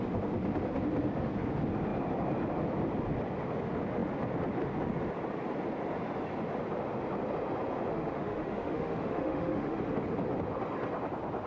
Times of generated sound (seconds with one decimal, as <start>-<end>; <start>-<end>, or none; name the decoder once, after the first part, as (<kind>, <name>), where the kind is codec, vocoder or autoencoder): 7.9-9.8 (autoencoder, DAC-VAE)